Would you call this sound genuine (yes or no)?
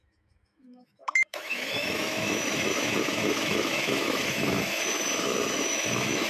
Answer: no